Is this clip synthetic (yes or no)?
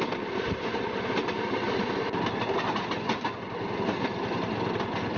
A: no